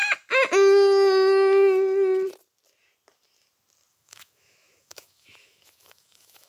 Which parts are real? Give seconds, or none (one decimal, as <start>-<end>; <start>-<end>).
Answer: 0.0-3.9